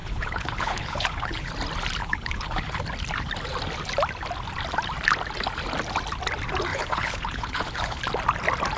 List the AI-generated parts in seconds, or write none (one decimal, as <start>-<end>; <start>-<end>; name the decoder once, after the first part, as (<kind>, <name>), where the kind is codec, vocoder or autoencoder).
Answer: 0.0-1.5 (codec, HILCodec); 2.0-2.8; 6.7-8.0